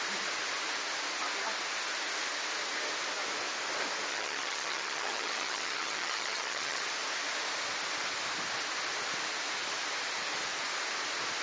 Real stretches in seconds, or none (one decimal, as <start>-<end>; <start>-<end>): 0.0-4.1; 6.8-11.4